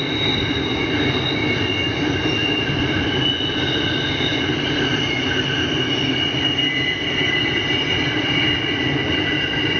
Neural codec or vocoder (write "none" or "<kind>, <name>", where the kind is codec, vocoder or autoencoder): none